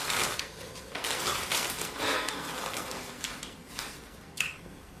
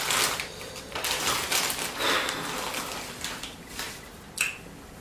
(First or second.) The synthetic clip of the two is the first